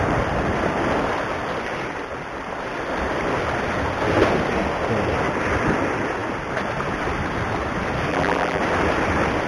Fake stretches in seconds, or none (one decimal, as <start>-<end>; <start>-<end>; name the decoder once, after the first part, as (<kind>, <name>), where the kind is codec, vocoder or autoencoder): 8.1-8.6 (vocoder, BigVGAN v2)